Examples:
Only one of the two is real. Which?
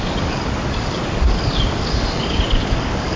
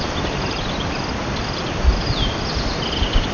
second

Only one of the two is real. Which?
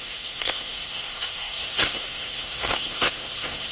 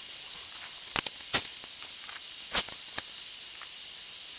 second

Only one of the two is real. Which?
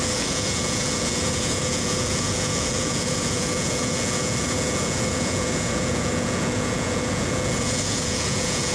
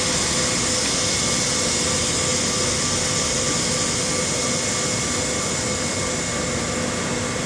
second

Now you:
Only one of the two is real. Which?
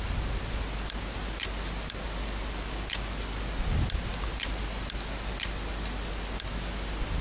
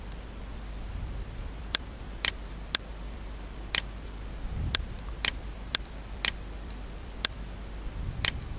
first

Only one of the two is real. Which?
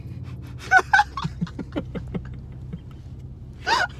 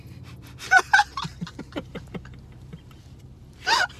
first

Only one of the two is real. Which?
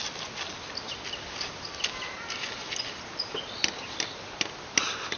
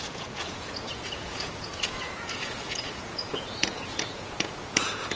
first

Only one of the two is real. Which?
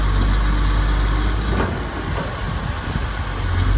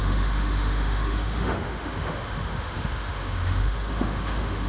first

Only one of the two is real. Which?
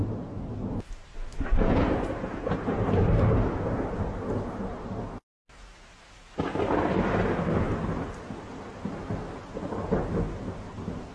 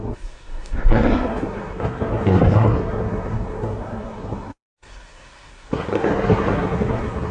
first